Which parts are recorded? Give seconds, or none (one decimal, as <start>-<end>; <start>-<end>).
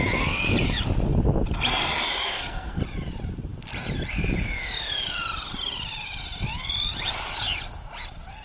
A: 0.0-2.2; 2.8-8.4